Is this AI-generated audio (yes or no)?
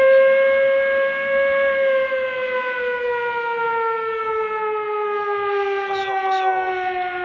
no